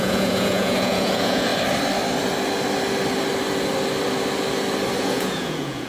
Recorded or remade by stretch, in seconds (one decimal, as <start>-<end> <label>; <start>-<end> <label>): 0.0-1.5 remade; 1.5-5.0 recorded; 5.0-5.9 remade